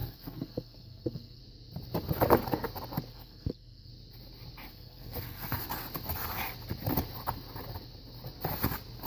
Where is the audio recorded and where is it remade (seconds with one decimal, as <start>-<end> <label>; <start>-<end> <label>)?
0.0-1.4 remade; 1.4-3.1 recorded; 3.1-3.9 remade; 3.9-4.7 recorded; 4.7-5.6 remade; 5.6-9.1 recorded

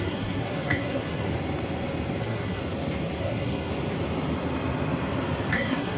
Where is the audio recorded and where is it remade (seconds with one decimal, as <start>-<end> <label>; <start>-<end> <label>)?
0.0-1.3 remade; 1.3-2.2 recorded; 2.2-2.6 remade; 2.6-3.2 recorded; 3.2-3.7 remade; 3.7-5.5 recorded; 5.5-6.0 remade